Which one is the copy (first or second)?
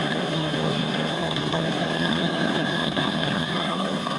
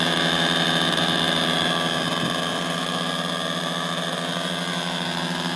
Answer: first